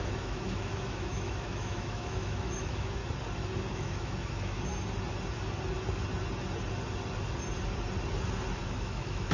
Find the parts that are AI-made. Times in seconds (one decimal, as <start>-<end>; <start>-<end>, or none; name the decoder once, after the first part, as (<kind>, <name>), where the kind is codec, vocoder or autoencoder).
0.0-3.0 (autoencoder, DAC-VAE); 3.7-4.7; 8.6-9.3